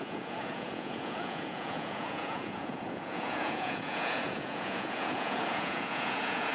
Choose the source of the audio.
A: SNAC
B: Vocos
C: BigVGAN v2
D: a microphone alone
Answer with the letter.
B